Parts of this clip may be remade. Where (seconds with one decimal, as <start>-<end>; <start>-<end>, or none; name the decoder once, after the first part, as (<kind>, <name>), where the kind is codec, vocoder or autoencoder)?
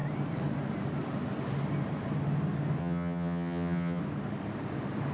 2.8-4.0 (vocoder, HiFi-GAN)